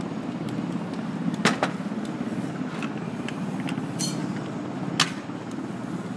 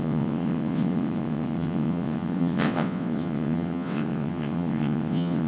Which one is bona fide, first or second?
first